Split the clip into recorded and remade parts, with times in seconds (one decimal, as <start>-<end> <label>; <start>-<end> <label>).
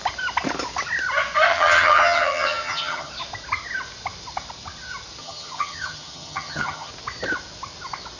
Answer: 0.0-1.5 recorded; 1.5-3.1 remade; 3.1-5.2 recorded; 5.2-6.9 remade; 6.9-8.2 recorded